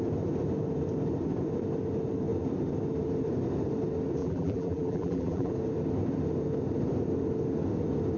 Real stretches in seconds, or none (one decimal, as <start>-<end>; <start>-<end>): 0.0-4.2; 5.5-8.2